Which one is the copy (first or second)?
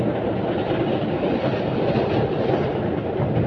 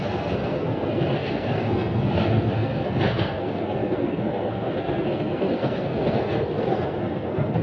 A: second